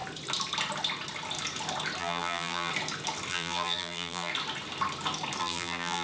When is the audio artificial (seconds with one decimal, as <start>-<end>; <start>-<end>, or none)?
2.0-2.7; 3.3-4.3; 5.4-6.0